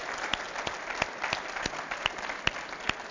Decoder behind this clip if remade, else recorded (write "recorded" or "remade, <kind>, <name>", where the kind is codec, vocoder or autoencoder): recorded